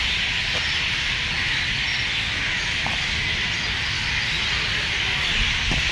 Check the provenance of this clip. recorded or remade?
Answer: recorded